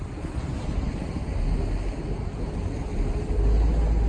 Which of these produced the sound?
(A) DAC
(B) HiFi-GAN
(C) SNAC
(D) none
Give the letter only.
D